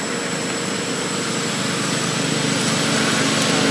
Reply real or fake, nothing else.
real